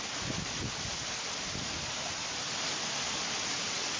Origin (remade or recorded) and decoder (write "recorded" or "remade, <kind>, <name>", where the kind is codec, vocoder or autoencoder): recorded